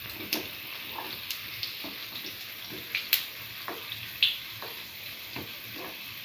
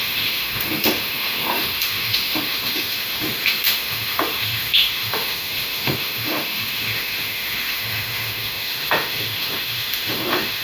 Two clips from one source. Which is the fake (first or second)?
second